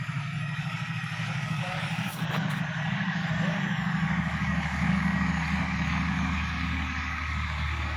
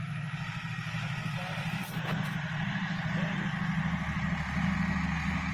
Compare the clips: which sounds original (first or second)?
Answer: second